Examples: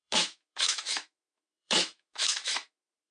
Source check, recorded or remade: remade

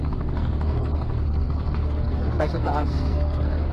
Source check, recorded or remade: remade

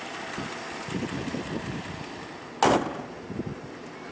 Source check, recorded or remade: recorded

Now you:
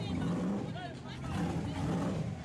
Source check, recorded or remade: recorded